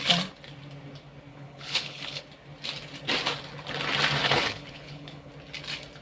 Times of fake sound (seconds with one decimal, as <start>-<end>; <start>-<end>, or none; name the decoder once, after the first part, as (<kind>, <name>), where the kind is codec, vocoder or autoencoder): 1.3-2.2 (codec, HILCodec); 4.2-5.3

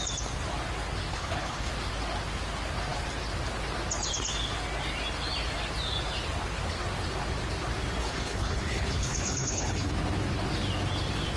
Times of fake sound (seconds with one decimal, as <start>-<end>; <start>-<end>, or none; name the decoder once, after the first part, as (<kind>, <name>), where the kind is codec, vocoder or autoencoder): 1.1-1.7 (codec, HILCodec); 8.0-9.9

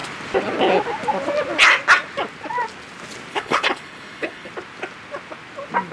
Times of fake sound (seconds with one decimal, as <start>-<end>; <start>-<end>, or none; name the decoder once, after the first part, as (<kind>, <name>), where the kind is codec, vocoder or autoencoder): 3.3-4.5 (codec, HILCodec)

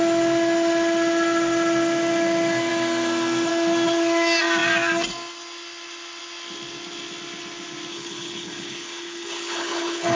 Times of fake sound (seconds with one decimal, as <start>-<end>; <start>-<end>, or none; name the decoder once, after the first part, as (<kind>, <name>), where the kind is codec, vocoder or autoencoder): 7.9-10.2 (codec, HILCodec)

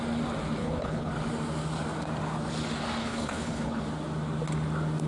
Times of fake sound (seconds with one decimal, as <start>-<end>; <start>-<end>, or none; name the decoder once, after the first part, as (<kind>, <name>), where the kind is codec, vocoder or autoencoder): 0.6-1.1 (codec, HILCodec); 3.0-3.8

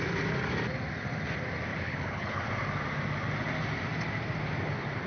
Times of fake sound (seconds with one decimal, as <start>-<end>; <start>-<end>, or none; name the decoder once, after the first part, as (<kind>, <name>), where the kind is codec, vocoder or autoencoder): 1.7-2.4 (codec, HILCodec)

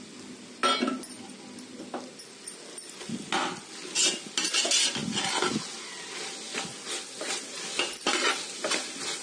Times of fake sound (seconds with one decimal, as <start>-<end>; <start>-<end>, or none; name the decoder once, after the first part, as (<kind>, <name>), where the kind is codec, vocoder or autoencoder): none